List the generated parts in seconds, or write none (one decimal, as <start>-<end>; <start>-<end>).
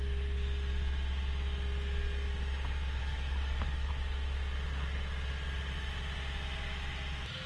3.0-3.9